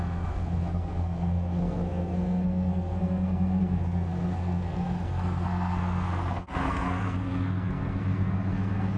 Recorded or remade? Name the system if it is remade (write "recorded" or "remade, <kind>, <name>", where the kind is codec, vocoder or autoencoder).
remade, codec, SNAC